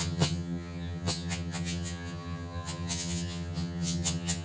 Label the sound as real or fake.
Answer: fake